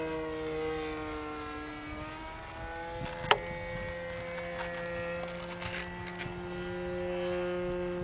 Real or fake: real